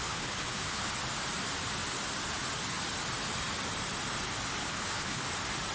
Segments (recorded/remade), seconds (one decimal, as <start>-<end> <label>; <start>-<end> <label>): 0.0-0.9 remade; 0.9-4.6 recorded; 4.6-5.3 remade; 5.3-5.7 recorded